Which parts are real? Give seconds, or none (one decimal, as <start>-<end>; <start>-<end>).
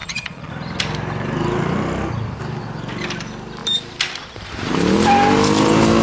0.5-6.0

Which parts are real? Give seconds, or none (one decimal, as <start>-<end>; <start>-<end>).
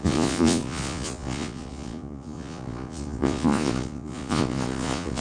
none